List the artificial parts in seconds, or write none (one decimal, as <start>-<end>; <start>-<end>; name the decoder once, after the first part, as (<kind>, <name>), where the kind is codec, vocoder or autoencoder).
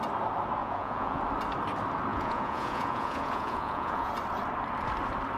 0.6-1.2 (vocoder, Vocos); 2.1-4.1